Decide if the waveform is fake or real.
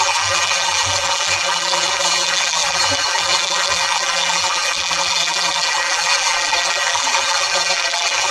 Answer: fake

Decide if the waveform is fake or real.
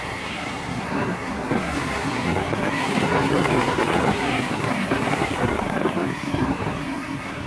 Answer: fake